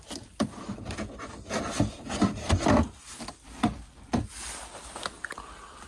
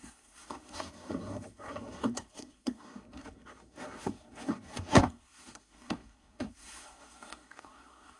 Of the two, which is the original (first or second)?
first